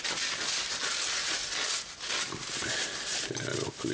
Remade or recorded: recorded